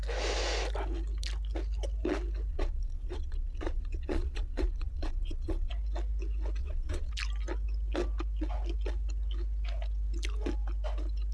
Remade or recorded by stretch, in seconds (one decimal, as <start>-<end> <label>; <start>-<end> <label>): 0.0-2.5 recorded; 2.5-5.7 remade; 5.7-6.6 recorded; 6.6-7.1 remade; 7.1-11.3 recorded